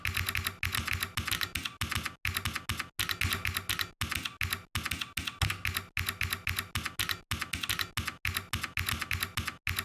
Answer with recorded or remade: recorded